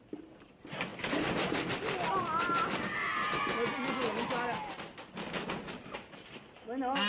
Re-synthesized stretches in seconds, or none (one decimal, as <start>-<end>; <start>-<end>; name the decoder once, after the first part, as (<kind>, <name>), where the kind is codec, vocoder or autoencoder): none